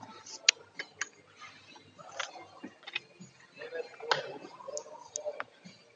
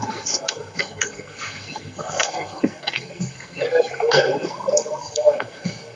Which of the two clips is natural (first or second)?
first